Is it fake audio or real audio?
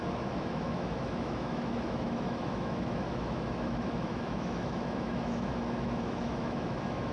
fake